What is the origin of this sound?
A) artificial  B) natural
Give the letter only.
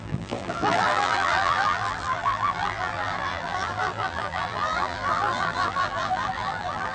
A